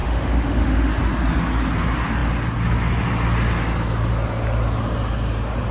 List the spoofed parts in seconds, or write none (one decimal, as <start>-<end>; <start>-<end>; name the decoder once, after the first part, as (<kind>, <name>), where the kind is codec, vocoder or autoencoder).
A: 0.0-0.9 (autoencoder, DAC-VAE)